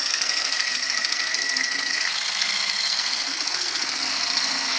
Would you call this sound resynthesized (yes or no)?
yes